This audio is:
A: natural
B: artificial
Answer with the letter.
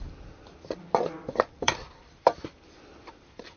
B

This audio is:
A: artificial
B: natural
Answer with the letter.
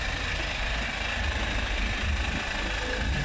B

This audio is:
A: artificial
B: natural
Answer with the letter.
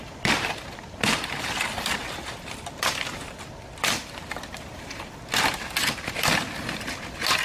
B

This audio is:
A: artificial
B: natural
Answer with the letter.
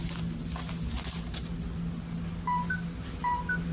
B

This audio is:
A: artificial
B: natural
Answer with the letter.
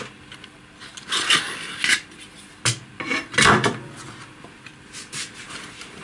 B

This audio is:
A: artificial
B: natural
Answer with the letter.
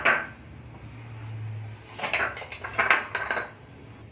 B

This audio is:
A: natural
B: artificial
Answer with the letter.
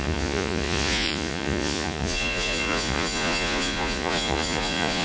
B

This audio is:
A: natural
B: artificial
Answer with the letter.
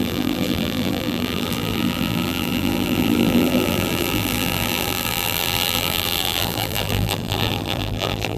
B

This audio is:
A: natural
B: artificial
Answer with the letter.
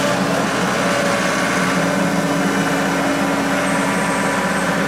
A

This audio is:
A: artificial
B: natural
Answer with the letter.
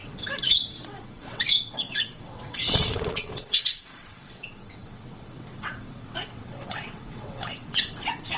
A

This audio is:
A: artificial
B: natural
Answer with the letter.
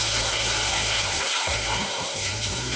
A